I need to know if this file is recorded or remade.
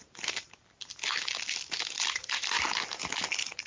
recorded